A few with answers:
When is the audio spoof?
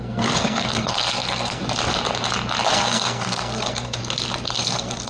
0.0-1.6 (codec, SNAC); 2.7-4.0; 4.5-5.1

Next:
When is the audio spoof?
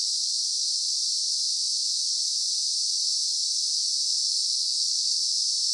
4.3-5.2 (codec, SNAC)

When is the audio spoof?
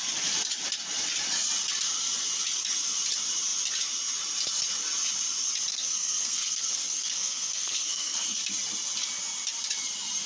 5.7-8.4 (codec, SNAC)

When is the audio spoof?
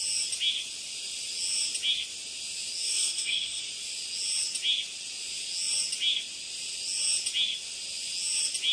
2.8-3.7 (codec, SNAC)